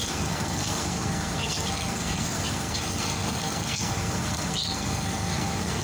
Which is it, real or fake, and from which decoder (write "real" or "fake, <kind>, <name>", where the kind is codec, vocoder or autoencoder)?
fake, codec, SNAC